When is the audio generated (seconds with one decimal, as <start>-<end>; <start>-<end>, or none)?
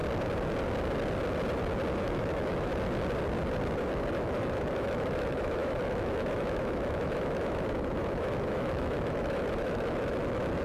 1.9-2.7; 4.1-10.6